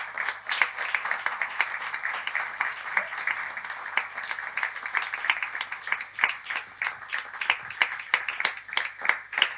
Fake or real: real